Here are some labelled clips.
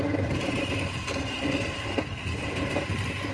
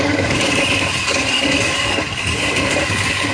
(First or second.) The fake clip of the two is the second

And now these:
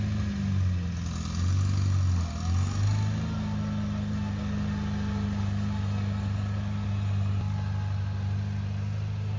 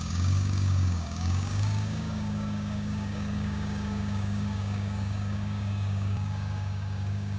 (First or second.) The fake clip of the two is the second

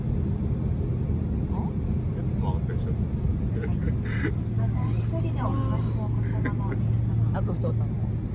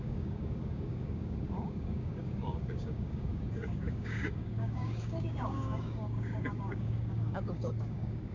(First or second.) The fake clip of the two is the second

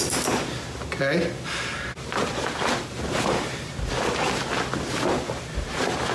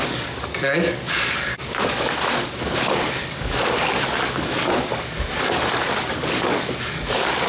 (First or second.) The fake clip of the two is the second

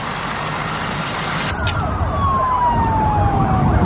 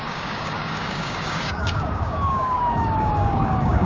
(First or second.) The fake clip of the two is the second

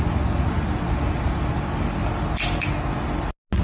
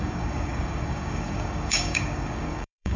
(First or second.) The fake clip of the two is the second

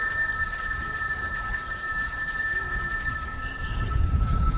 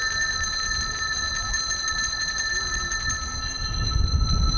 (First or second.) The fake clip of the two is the first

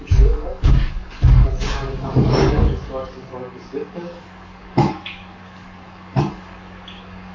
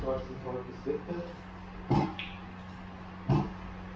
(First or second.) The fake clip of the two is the first